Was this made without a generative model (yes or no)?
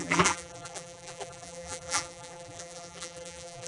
no